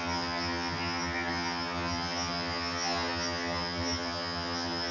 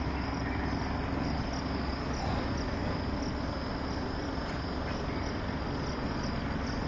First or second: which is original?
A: second